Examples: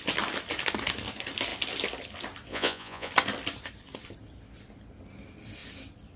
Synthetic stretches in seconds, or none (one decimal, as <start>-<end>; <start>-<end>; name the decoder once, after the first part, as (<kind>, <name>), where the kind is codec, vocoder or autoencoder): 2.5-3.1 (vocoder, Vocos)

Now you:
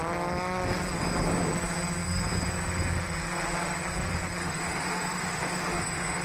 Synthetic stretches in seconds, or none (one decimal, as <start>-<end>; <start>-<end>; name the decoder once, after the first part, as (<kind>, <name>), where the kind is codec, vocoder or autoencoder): 4.4-6.2 (autoencoder, DAC-VAE)

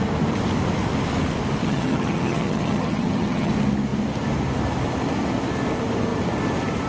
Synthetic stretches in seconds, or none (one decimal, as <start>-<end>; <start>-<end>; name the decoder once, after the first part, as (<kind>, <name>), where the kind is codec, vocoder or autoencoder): 1.6-3.5 (vocoder, HiFi-GAN)

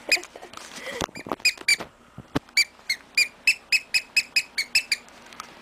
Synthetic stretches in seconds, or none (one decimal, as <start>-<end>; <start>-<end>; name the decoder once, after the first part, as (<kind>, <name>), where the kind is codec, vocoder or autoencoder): none

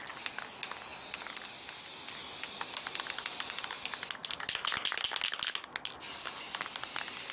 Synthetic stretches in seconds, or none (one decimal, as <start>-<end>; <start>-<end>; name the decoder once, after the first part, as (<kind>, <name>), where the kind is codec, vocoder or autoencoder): none